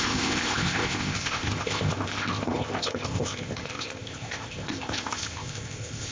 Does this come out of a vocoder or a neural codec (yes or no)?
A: yes